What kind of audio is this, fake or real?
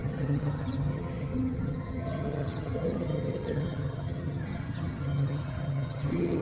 fake